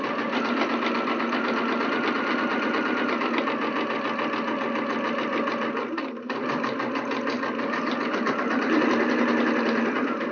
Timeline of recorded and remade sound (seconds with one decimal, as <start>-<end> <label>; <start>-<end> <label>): 0.0-10.3 recorded